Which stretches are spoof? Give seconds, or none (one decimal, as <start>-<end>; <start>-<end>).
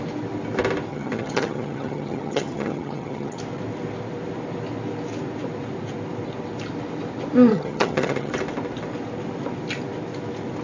0.9-3.4; 7.5-8.3